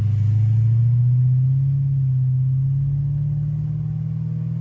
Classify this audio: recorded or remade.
recorded